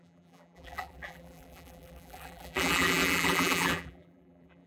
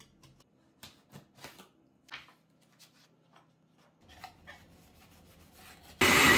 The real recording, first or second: second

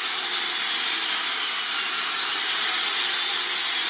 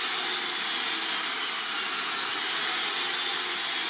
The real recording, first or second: second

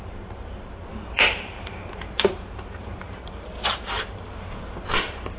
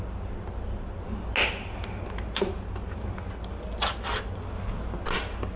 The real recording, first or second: second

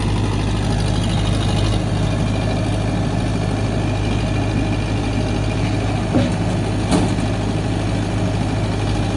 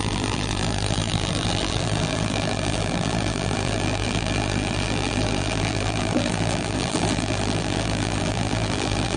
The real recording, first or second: first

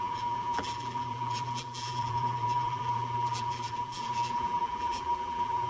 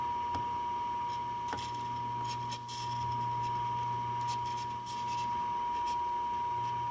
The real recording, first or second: second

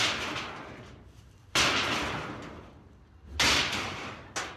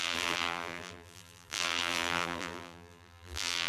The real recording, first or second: first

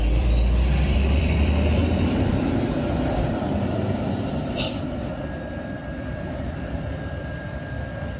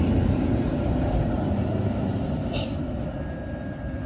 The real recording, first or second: second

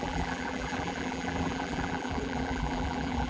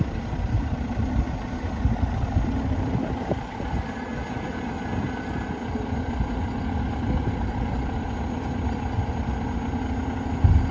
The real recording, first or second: second